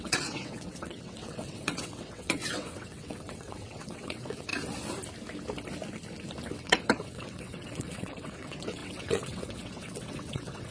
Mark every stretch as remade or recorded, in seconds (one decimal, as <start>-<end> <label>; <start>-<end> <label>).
0.0-4.5 remade; 4.5-6.5 recorded; 6.5-10.7 remade